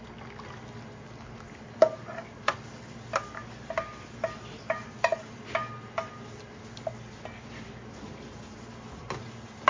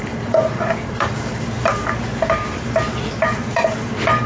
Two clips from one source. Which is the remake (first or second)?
second